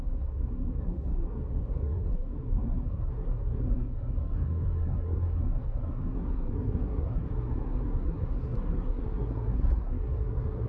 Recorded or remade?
remade